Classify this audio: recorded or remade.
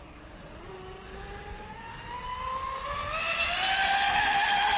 recorded